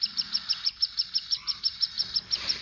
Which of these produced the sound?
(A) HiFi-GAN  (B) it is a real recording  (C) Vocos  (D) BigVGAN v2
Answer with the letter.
B